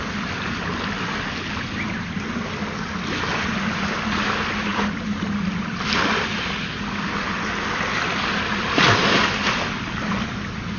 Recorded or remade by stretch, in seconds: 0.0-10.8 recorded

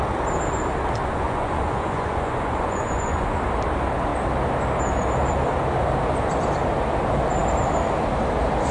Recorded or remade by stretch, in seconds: 0.0-1.0 recorded; 1.0-3.4 remade; 3.4-8.7 recorded

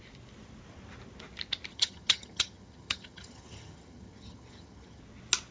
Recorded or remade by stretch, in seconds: 0.0-1.7 recorded; 1.7-5.0 remade; 5.0-5.5 recorded

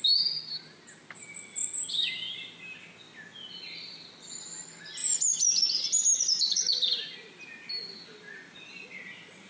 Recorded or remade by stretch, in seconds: 0.0-9.5 recorded

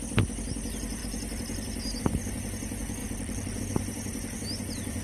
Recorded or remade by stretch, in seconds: 0.0-3.0 recorded; 3.0-3.6 remade; 3.6-5.0 recorded

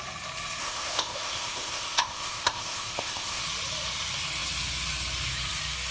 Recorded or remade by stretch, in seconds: 0.0-0.6 recorded; 0.6-3.4 remade; 3.4-5.9 recorded

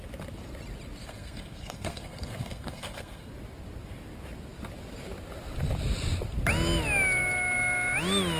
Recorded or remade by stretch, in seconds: 0.0-1.0 recorded; 1.0-3.3 remade; 3.3-8.4 recorded

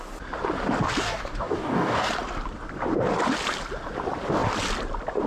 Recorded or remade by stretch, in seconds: 0.0-1.0 recorded; 1.0-2.1 remade; 2.1-5.3 recorded